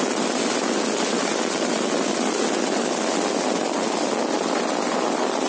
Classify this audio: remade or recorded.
recorded